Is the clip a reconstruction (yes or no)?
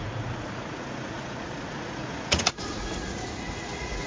yes